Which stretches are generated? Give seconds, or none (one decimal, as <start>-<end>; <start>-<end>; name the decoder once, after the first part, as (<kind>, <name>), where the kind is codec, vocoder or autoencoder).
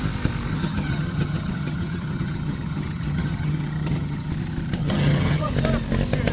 0.5-4.3 (vocoder, HiFi-GAN); 4.8-5.5